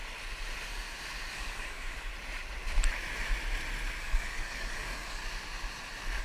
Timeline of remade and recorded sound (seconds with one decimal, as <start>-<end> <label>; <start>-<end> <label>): 0.0-1.3 recorded; 1.3-2.1 remade; 2.1-4.0 recorded; 4.0-5.2 remade; 5.2-6.2 recorded